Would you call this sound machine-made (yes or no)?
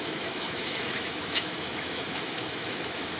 yes